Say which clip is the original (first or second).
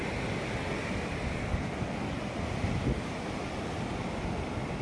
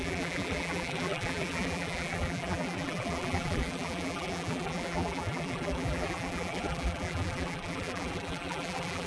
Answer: first